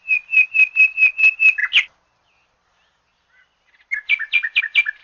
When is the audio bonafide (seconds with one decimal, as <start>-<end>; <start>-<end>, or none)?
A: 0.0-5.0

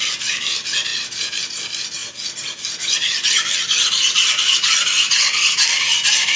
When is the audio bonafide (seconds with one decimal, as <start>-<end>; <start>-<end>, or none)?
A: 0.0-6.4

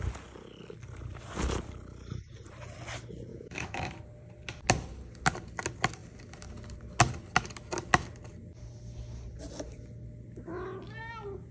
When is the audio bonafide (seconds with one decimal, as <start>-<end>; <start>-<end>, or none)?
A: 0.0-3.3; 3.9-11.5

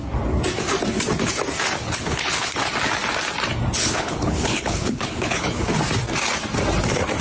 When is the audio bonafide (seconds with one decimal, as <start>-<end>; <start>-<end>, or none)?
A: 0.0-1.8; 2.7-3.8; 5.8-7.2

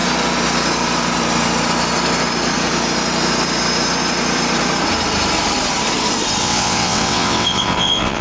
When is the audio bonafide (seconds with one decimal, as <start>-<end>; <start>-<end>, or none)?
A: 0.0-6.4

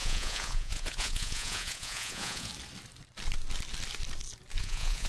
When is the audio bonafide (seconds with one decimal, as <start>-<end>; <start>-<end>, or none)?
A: 2.5-4.6

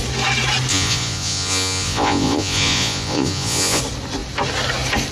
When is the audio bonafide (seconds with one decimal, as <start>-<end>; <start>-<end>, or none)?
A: 0.0-0.7; 3.8-5.1

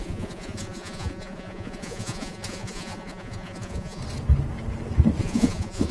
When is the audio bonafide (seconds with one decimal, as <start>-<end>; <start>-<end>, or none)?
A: 4.0-5.2